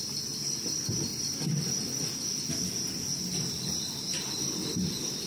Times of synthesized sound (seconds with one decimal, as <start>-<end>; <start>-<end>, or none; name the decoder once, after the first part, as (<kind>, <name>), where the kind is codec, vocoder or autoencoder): none